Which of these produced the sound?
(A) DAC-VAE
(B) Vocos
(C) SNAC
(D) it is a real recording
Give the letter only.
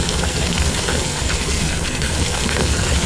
C